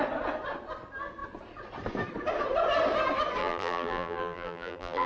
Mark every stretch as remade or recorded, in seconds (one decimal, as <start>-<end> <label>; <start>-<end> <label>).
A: 0.0-3.4 recorded; 3.4-5.1 remade